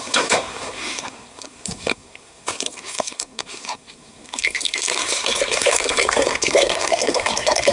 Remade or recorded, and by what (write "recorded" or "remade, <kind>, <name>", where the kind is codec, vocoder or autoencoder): remade, codec, SNAC